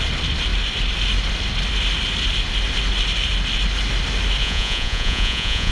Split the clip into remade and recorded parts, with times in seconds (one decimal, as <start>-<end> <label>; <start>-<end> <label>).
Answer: 0.0-4.4 recorded; 4.4-5.7 remade